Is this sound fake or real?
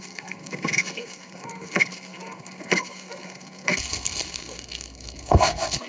fake